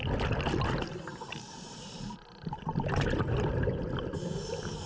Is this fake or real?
real